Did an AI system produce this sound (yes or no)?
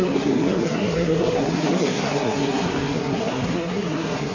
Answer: yes